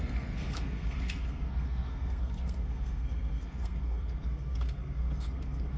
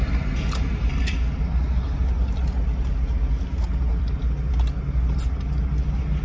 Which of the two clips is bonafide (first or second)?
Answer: second